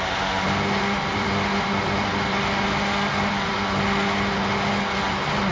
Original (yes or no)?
yes